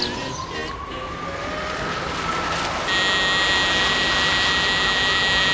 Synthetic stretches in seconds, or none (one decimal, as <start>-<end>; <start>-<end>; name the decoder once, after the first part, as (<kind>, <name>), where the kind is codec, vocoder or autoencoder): none